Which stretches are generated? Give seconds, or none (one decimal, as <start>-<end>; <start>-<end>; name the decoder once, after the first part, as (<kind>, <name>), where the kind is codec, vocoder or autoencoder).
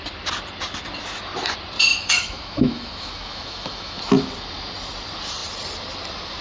1.9-4.0 (autoencoder, DAC-VAE)